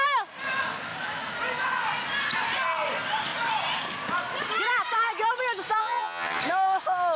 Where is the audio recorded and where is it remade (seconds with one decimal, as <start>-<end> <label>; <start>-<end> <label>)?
0.0-5.8 recorded; 5.8-6.4 remade; 6.4-7.2 recorded